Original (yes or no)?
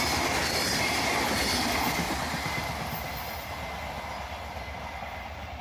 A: yes